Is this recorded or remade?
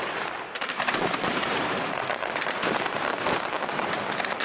remade